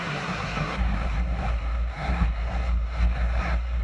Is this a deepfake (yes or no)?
yes